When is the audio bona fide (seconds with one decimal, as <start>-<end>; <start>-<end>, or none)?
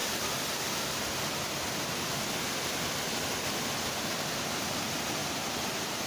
0.0-6.1